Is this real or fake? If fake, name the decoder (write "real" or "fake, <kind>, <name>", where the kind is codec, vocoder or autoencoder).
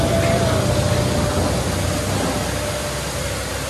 real